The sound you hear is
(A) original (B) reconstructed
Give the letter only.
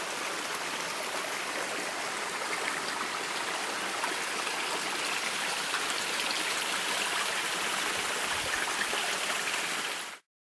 A